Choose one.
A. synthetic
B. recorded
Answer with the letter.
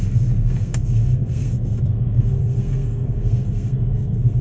A